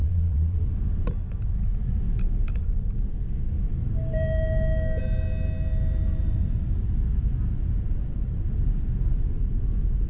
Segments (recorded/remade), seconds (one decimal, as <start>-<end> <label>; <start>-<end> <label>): 0.0-0.6 remade; 0.6-10.1 recorded

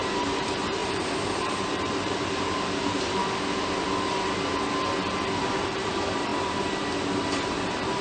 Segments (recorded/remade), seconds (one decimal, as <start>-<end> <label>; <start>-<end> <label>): 0.0-3.2 remade; 3.2-5.4 recorded; 5.4-8.0 remade

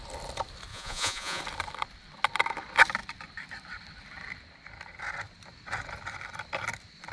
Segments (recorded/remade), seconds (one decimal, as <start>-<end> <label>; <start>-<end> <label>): 0.0-0.7 recorded; 0.7-1.4 remade; 1.4-7.1 recorded

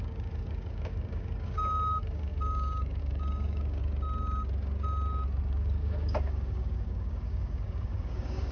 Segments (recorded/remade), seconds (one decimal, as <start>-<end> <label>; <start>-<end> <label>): 0.0-3.8 remade; 3.8-5.4 recorded; 5.4-8.5 remade

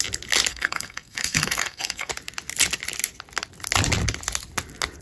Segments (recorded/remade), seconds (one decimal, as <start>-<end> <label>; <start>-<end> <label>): 0.0-0.5 recorded; 0.5-2.1 remade; 2.1-5.0 recorded

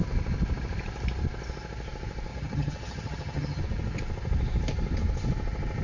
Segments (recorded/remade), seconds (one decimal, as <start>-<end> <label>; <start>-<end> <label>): 0.0-2.3 recorded; 2.3-3.6 remade; 3.6-5.8 recorded